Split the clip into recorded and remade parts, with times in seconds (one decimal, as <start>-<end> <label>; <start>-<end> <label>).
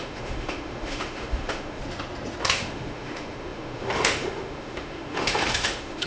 0.0-1.8 remade; 1.8-2.4 recorded; 2.4-6.1 remade